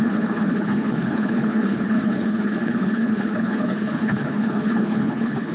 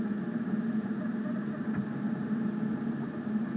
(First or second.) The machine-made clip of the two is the first